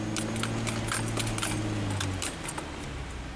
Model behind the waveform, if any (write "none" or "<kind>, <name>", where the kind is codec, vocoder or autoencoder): none